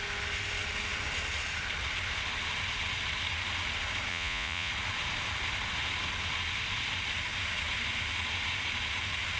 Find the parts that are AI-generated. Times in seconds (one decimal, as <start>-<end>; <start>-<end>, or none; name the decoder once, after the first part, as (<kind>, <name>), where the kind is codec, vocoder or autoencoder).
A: 4.1-4.7 (vocoder, Vocos)